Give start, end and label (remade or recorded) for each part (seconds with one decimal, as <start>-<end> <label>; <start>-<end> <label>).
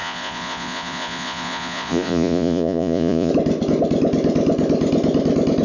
0.0-3.3 remade; 3.3-5.6 recorded